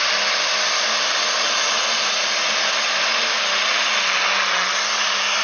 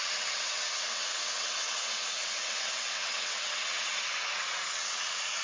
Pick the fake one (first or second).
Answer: second